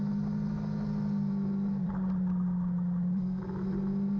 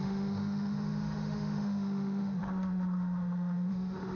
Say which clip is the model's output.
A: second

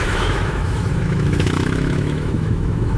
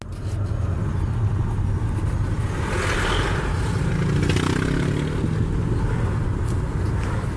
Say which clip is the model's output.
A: first